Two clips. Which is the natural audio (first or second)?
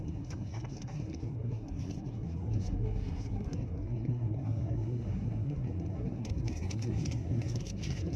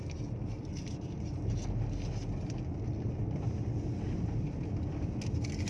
second